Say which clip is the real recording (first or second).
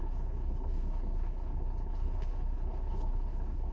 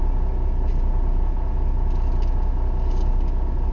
second